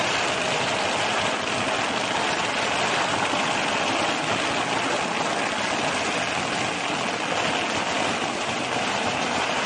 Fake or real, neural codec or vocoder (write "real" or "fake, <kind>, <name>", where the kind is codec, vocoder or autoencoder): real